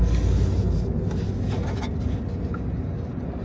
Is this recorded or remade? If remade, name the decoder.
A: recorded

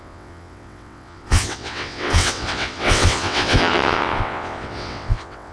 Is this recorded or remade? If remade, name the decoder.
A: remade, vocoder, WaveNeXt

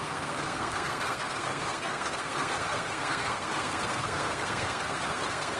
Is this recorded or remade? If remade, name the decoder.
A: remade, codec, SNAC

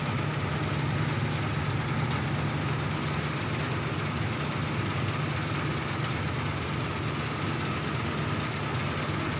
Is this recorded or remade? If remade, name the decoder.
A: recorded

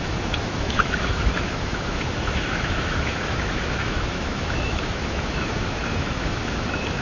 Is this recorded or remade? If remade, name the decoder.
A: remade, autoencoder, DAC-VAE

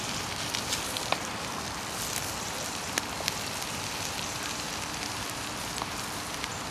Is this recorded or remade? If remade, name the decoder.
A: remade, vocoder, BigVGAN v2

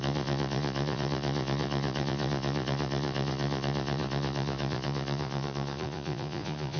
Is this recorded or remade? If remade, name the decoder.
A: remade, vocoder, Vocos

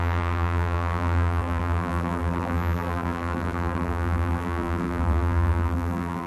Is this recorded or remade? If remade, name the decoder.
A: remade, vocoder, BigVGAN v2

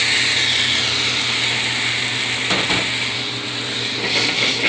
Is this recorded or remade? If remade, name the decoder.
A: recorded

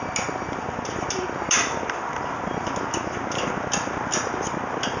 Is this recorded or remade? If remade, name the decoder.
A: recorded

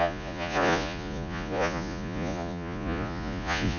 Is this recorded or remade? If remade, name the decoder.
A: remade, vocoder, Vocos